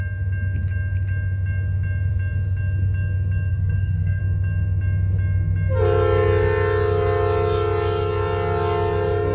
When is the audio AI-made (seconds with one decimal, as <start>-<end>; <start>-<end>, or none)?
3.5-4.2